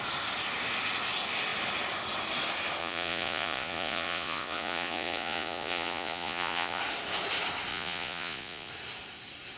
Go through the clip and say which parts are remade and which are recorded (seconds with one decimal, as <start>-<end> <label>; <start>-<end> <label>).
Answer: 0.0-2.8 recorded; 2.8-6.8 remade; 6.8-7.7 recorded; 7.7-8.7 remade; 8.7-9.6 recorded